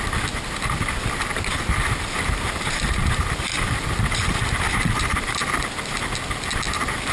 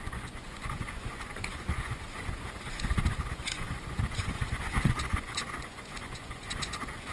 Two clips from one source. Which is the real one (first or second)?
first